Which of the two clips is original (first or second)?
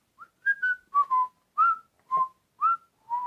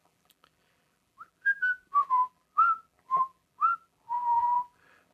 first